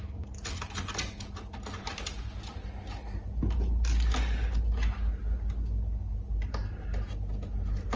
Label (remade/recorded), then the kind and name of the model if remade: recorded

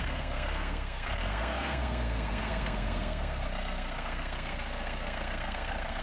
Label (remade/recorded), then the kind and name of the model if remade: remade, codec, SNAC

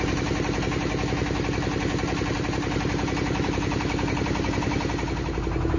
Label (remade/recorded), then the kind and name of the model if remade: recorded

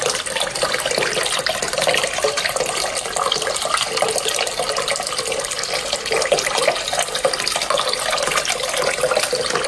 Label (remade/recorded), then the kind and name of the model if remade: recorded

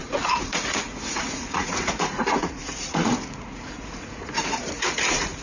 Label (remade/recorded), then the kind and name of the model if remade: remade, vocoder, Vocos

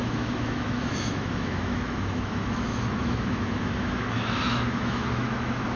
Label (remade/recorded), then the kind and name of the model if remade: remade, autoencoder, DAC-VAE